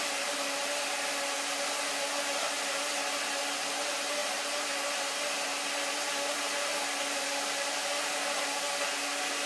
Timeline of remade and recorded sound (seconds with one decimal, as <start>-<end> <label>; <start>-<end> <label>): 0.0-9.5 recorded